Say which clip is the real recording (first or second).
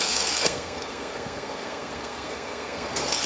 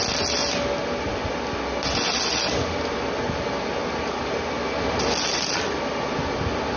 second